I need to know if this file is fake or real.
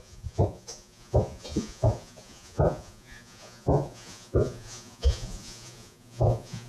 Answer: fake